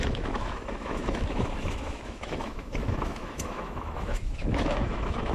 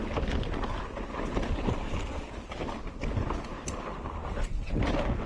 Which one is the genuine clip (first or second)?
second